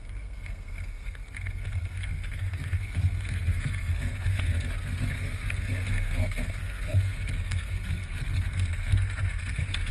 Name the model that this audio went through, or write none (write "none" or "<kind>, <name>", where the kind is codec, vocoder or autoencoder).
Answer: codec, SNAC